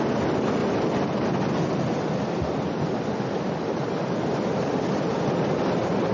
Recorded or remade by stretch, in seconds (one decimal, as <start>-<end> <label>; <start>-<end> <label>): 0.0-6.1 recorded

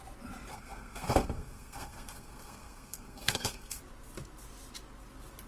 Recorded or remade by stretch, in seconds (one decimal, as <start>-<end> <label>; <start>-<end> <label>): 0.0-0.5 recorded; 0.5-3.8 remade; 3.8-5.5 recorded

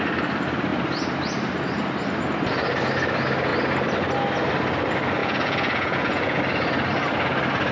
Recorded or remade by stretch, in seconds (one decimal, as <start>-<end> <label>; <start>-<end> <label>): 0.0-5.2 recorded; 5.2-6.4 remade; 6.4-7.7 recorded

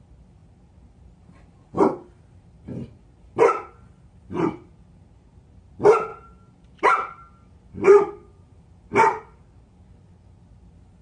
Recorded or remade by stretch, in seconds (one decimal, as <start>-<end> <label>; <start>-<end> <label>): 0.0-0.4 recorded; 0.4-5.3 remade; 5.3-6.1 recorded; 6.1-9.7 remade; 9.7-11.0 recorded

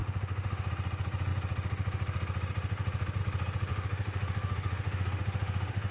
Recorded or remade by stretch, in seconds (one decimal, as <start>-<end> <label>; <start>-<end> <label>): 0.0-0.7 remade; 0.7-3.7 recorded; 3.7-5.9 remade